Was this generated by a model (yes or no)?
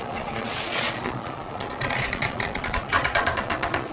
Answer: yes